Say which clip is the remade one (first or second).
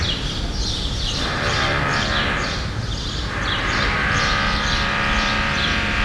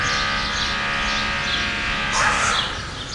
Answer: first